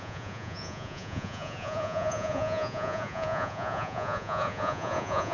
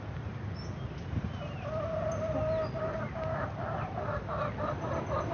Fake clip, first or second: first